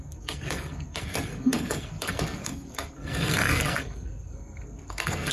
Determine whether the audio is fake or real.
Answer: fake